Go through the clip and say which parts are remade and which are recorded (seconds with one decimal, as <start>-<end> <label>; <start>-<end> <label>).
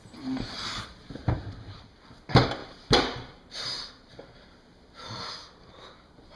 0.0-1.2 recorded; 1.2-2.0 remade; 2.0-2.6 recorded; 2.6-4.6 remade; 4.6-6.4 recorded